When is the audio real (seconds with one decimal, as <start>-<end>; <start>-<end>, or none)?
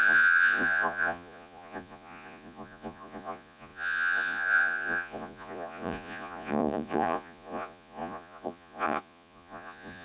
none